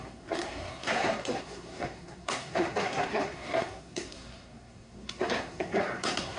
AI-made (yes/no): yes